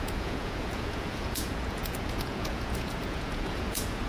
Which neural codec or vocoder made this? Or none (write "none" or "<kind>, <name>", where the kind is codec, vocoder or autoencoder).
vocoder, Vocos